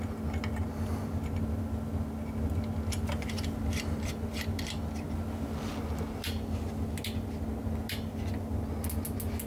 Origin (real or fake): real